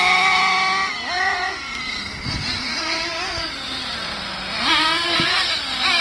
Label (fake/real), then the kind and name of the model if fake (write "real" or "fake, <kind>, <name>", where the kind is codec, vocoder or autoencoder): real